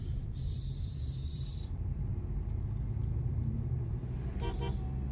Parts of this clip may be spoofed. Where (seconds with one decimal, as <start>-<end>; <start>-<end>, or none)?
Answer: 0.0-2.1; 3.2-4.0